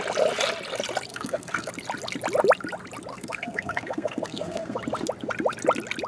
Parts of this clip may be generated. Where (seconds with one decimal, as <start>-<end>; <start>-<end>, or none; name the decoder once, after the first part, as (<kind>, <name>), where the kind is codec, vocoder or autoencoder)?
1.1-1.7 (codec, SNAC); 3.1-4.8